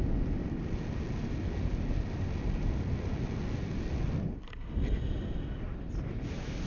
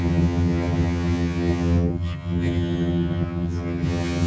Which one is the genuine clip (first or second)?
first